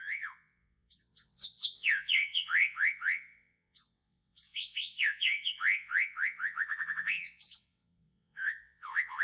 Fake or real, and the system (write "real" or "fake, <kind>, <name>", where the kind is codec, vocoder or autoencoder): fake, vocoder, WaveNeXt